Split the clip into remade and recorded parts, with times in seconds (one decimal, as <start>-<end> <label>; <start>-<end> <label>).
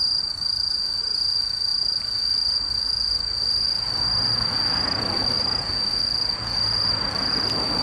0.0-7.8 recorded